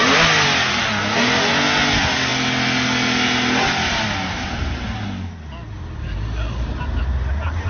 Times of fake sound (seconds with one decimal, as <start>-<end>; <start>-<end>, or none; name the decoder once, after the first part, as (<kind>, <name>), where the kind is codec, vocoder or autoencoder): none